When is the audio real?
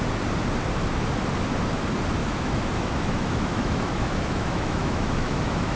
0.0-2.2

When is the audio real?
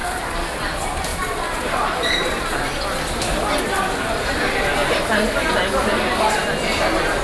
0.0-7.2